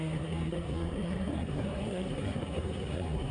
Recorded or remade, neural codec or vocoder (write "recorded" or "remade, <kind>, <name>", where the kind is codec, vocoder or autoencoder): remade, codec, SNAC